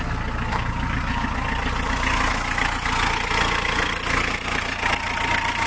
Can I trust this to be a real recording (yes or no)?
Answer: yes